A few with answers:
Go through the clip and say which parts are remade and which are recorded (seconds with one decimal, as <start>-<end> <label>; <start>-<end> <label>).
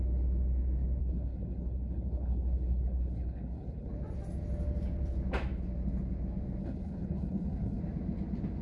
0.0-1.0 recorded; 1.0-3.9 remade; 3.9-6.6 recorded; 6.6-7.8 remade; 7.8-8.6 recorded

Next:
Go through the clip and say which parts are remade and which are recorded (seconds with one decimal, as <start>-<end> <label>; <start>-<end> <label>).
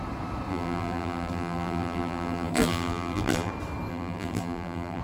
0.0-0.5 recorded; 0.5-3.5 remade; 3.5-3.9 recorded; 3.9-5.0 remade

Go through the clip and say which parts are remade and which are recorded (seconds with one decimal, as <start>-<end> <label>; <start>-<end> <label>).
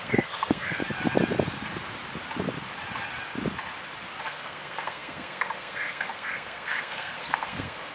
0.0-0.8 remade; 0.8-4.2 recorded; 4.2-7.9 remade